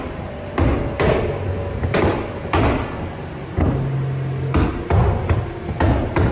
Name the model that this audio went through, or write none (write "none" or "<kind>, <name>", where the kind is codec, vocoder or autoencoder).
none